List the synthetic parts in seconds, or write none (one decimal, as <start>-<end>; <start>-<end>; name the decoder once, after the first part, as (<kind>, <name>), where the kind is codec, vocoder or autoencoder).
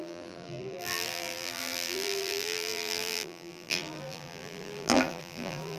0.0-5.8 (vocoder, BigVGAN v2)